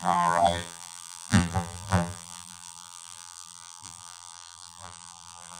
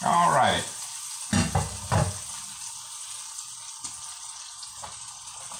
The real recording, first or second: second